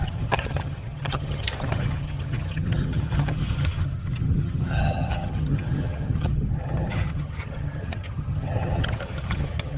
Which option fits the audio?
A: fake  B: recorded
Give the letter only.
A